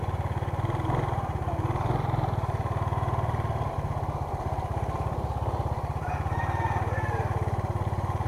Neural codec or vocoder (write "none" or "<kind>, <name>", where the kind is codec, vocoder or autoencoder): vocoder, BigVGAN v2